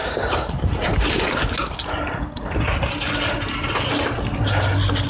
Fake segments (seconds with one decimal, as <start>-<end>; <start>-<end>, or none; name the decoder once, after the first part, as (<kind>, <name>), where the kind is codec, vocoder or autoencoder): 0.0-1.3 (vocoder, BigVGAN v2)